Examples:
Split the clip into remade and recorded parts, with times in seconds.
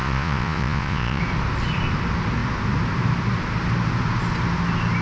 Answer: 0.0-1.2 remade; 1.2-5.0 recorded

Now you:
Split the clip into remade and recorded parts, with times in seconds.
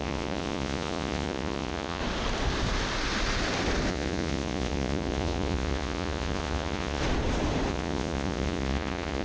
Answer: 0.0-2.0 remade; 2.0-3.9 recorded; 3.9-7.0 remade; 7.0-7.7 recorded; 7.7-9.2 remade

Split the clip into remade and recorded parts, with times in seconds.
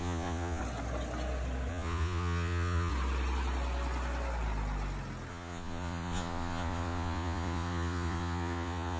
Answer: 0.0-0.6 remade; 0.6-1.7 recorded; 1.7-2.9 remade; 2.9-5.3 recorded; 5.3-9.0 remade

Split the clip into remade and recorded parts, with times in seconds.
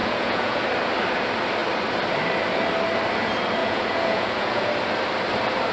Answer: 0.0-0.6 remade; 0.6-3.6 recorded; 3.6-4.7 remade; 4.7-5.7 recorded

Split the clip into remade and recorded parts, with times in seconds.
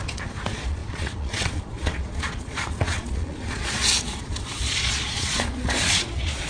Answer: 0.0-6.5 remade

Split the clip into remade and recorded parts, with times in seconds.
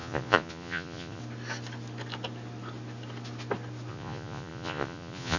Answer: 0.0-1.2 remade; 1.2-3.9 recorded; 3.9-5.4 remade